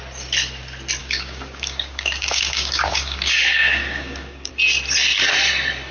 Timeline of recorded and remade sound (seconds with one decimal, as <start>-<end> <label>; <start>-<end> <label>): 0.0-1.0 recorded; 1.0-4.5 remade; 4.5-5.9 recorded